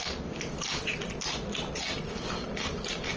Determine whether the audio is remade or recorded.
recorded